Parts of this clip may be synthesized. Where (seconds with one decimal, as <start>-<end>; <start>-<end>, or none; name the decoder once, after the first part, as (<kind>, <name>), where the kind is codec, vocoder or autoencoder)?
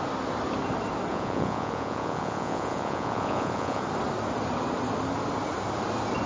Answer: 1.1-3.8 (vocoder, Vocos)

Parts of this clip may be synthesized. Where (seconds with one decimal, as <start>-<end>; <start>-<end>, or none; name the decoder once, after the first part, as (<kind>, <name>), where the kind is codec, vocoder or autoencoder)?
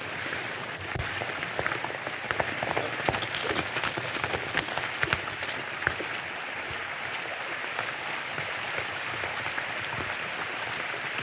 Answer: none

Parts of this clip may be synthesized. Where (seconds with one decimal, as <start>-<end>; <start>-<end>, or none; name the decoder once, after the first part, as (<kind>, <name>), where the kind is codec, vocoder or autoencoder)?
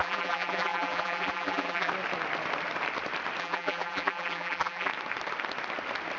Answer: 0.0-1.9 (vocoder, BigVGAN v2); 3.4-4.9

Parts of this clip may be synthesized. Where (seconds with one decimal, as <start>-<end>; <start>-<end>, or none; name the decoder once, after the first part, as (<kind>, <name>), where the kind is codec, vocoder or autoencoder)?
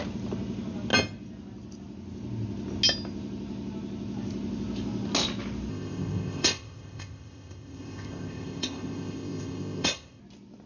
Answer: 5.7-10.2 (codec, ZipCodec)